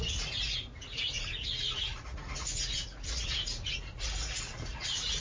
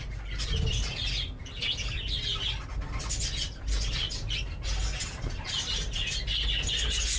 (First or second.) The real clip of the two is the second